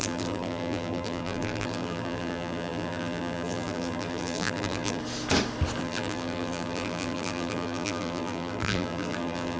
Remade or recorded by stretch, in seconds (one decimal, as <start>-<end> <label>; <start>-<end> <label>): 0.0-5.0 remade; 5.0-5.8 recorded; 5.8-9.6 remade